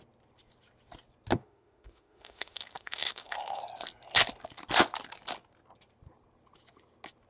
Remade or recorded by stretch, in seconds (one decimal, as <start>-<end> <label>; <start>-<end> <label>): 0.0-1.4 recorded; 1.4-3.6 remade; 3.6-7.3 recorded